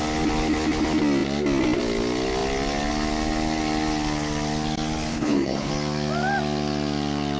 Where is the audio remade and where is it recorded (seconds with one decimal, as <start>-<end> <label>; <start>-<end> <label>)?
0.0-5.1 recorded; 5.1-5.7 remade; 5.7-7.4 recorded

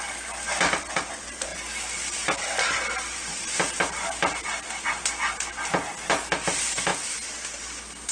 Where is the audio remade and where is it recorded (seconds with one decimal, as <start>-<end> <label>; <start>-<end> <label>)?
0.0-8.1 recorded

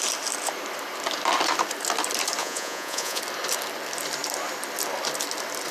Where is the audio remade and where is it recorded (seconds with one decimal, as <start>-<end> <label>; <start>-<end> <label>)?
0.0-2.4 recorded; 2.4-3.2 remade; 3.2-5.7 recorded

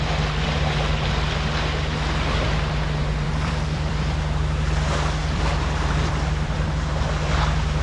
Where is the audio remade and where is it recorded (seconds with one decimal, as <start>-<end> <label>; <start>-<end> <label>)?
0.0-3.0 recorded; 3.0-4.2 remade; 4.2-5.2 recorded; 5.2-6.7 remade; 6.7-7.8 recorded

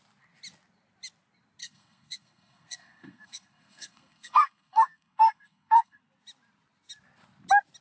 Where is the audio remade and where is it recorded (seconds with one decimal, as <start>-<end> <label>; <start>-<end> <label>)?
0.0-1.6 recorded; 1.6-6.0 remade; 6.0-7.8 recorded